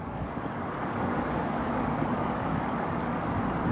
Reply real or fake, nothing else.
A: fake